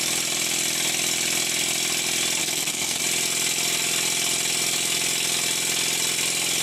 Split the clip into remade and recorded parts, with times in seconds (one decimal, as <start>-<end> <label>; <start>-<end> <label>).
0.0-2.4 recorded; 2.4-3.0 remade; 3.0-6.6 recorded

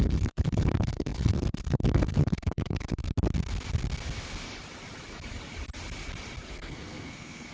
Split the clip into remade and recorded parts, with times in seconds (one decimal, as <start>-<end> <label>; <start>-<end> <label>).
0.0-3.0 remade; 3.0-6.5 recorded; 6.5-7.5 remade

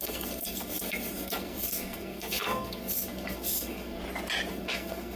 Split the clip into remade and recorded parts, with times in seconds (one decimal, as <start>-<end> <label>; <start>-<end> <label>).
0.0-4.0 remade; 4.0-4.5 recorded; 4.5-5.2 remade